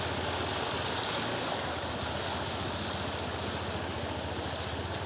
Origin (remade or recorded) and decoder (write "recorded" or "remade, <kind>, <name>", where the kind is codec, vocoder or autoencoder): recorded